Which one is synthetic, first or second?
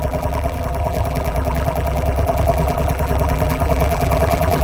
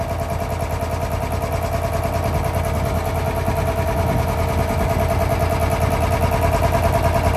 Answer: first